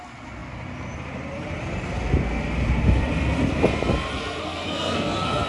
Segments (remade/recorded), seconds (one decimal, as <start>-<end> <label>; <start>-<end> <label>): 0.0-4.1 recorded; 4.1-5.5 remade